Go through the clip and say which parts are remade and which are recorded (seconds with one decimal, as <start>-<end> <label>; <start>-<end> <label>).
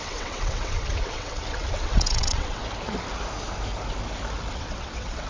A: 0.0-2.6 remade; 2.6-4.5 recorded; 4.5-5.3 remade